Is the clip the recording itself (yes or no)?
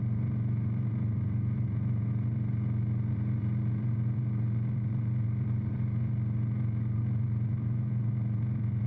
no